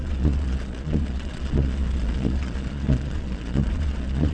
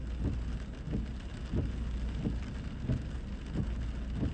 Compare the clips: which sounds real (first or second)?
second